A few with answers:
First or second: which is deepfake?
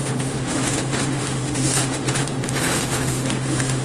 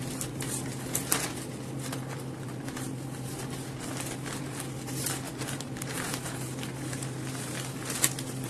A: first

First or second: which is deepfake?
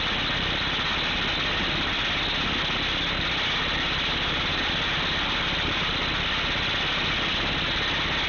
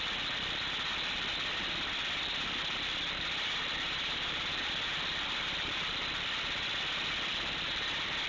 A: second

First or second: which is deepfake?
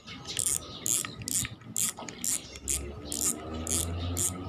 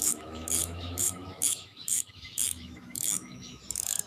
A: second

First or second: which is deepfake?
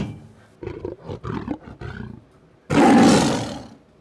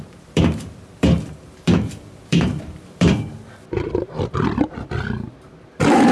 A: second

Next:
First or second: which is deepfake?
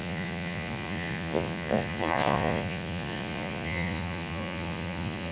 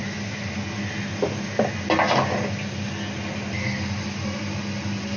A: first